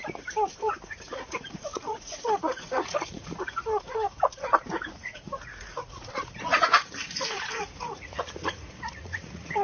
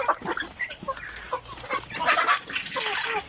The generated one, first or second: first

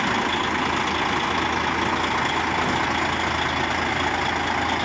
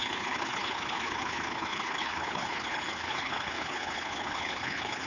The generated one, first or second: second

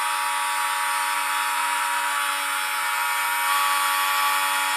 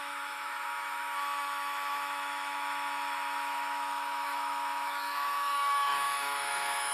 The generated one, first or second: second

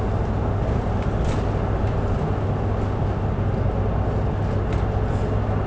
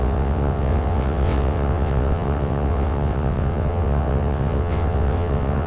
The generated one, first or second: second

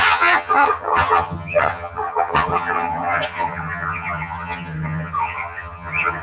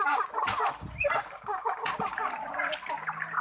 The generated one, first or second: first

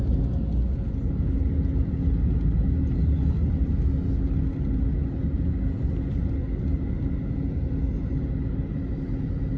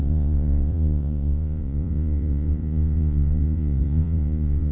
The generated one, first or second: second